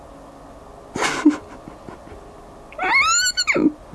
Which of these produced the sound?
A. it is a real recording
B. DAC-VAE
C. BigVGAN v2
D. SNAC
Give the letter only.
A